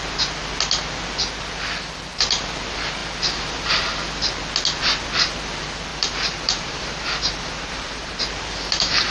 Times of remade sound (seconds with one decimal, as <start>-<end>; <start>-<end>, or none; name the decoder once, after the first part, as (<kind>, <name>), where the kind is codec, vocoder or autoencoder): 5.9-8.2 (vocoder, BigVGAN v2)